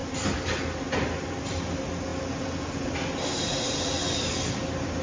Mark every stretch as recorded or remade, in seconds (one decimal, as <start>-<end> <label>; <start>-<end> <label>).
0.0-5.0 recorded